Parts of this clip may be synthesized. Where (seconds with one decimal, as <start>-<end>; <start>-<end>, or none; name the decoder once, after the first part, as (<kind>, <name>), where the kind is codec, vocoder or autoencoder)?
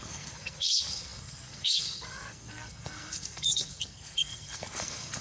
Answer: 0.0-5.2 (codec, SNAC)